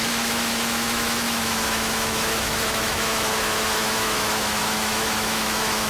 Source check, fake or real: fake